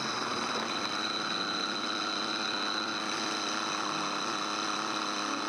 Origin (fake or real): real